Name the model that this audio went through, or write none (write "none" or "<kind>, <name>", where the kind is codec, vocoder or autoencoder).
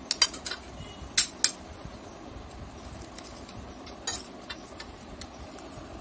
none